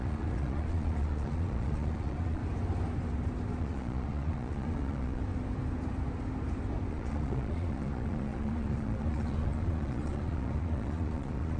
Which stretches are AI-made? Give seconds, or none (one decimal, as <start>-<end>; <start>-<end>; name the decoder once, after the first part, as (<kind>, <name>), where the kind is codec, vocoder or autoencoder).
0.0-2.4 (vocoder, Vocos); 3.6-5.2; 6.9-11.6